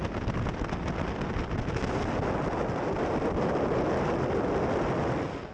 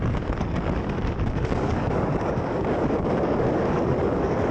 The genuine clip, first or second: first